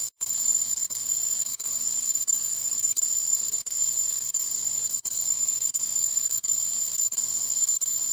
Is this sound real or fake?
fake